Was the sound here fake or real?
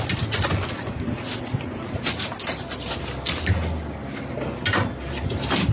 real